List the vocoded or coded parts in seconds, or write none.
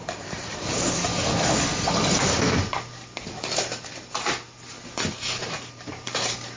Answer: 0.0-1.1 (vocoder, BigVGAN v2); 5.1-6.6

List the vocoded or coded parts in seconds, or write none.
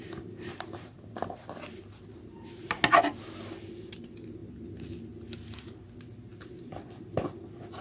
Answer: none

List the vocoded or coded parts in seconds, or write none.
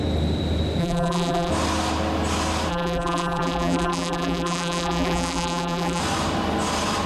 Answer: 0.8-1.5 (vocoder, BigVGAN v2); 2.7-6.0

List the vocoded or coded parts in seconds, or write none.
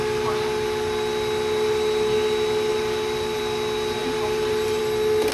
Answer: 2.7-3.4 (vocoder, BigVGAN v2); 4.0-4.8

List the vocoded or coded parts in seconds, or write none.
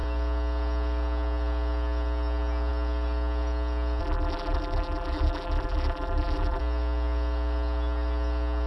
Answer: 4.0-6.6 (vocoder, BigVGAN v2)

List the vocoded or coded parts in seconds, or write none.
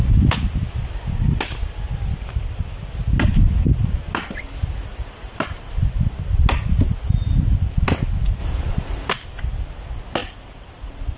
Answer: 4.6-5.9 (vocoder, BigVGAN v2); 8.4-9.1; 10.2-11.2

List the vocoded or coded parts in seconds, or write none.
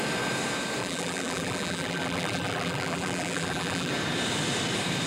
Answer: 0.8-3.9 (vocoder, BigVGAN v2)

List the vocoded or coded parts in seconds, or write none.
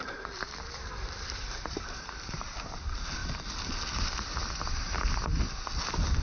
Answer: 0.0-3.2 (vocoder, BigVGAN v2)